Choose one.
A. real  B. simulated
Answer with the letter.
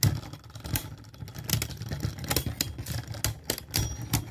A